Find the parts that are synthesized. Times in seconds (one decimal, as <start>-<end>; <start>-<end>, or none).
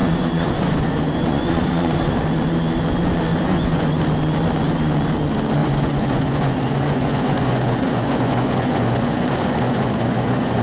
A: 0.0-2.1; 3.3-4.0; 5.6-10.6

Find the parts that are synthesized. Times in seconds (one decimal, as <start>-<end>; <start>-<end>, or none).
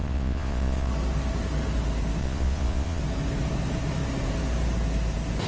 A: 0.0-0.9; 2.2-3.0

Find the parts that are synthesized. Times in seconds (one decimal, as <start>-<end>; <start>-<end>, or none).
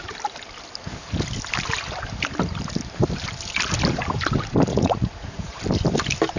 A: 4.7-5.6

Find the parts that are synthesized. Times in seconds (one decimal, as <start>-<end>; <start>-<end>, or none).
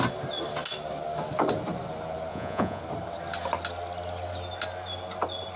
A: 2.3-2.8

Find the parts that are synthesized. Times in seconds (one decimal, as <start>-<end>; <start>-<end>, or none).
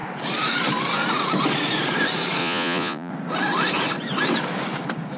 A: 2.4-3.1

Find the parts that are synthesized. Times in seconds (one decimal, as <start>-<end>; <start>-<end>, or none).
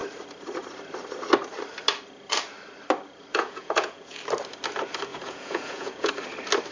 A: 3.3-4.2; 5.1-6.1